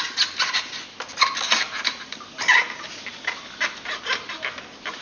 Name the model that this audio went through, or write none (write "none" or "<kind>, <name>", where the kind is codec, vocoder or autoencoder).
none